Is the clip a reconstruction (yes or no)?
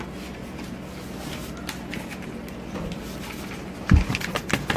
no